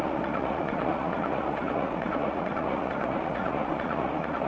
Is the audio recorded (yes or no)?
no